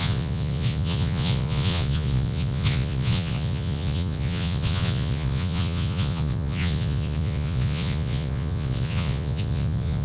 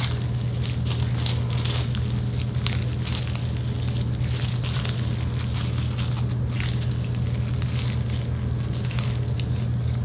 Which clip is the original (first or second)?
second